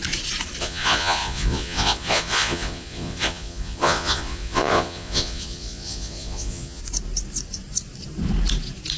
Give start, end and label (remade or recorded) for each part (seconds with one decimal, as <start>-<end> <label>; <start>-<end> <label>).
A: 0.0-0.6 recorded; 0.6-6.8 remade; 6.8-9.0 recorded